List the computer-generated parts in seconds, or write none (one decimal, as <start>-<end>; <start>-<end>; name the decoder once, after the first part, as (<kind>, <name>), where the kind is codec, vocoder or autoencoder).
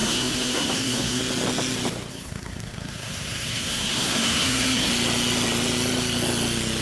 0.0-1.2 (codec, SNAC); 2.1-4.9